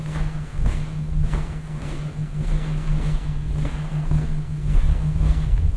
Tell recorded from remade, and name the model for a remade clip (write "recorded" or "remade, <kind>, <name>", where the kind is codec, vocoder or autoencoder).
remade, codec, SNAC